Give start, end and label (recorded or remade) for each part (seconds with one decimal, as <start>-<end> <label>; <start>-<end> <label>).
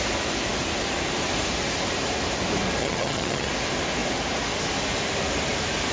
0.0-2.8 recorded; 2.8-3.5 remade; 3.5-5.9 recorded